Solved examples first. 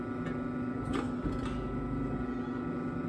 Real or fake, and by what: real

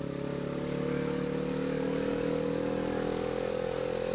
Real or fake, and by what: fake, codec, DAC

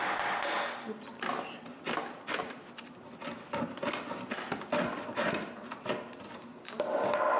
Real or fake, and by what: real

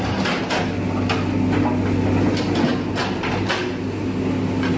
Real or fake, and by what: real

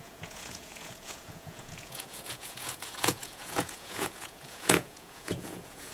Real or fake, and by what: fake, vocoder, Vocos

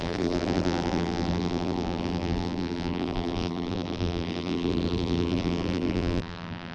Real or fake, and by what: fake, vocoder, BigVGAN v2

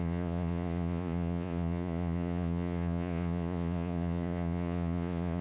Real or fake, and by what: fake, vocoder, Vocos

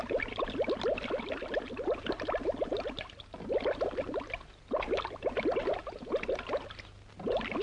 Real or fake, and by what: real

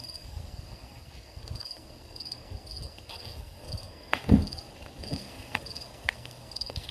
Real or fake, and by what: fake, codec, SNAC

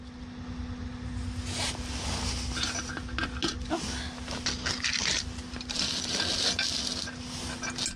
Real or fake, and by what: real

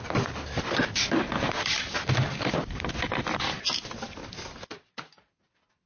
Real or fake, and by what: real